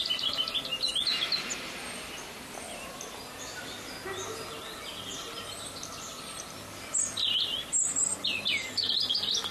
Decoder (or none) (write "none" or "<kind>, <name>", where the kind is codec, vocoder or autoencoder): none